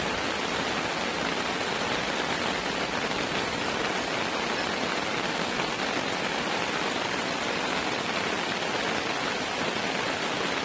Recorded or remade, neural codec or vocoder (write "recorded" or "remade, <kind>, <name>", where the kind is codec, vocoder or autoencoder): recorded